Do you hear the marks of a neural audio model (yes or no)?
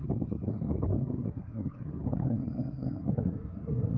yes